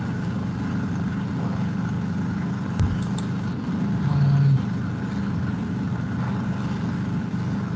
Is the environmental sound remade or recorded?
recorded